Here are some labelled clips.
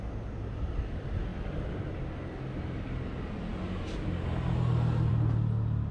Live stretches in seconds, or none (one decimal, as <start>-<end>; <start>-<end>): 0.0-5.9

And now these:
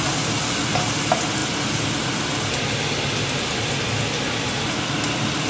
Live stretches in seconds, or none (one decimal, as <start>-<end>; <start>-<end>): 0.0-5.5

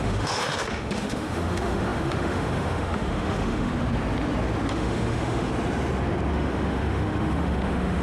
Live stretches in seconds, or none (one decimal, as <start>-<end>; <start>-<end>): 3.7-4.7; 5.5-6.3

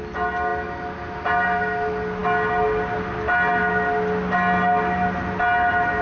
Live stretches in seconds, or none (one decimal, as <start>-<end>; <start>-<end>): 0.0-6.0

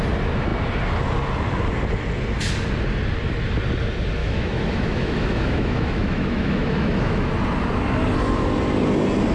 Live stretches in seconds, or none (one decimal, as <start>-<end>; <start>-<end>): 0.0-4.2; 7.3-9.3